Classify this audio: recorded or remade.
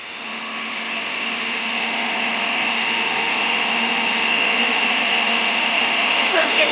remade